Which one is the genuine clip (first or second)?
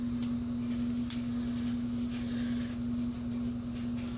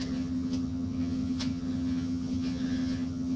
first